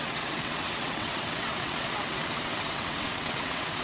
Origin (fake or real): fake